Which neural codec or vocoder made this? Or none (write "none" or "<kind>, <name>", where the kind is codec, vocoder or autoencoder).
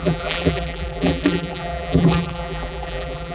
vocoder, BigVGAN v2